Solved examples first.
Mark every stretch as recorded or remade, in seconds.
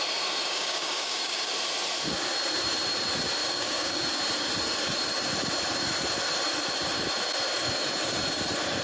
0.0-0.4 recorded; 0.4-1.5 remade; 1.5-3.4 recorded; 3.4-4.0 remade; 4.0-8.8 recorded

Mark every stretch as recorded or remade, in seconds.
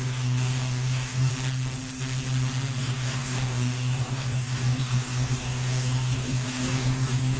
0.0-1.3 remade; 1.3-2.8 recorded; 2.8-7.4 remade